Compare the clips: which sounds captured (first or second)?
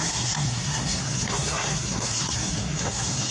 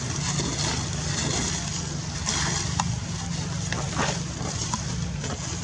second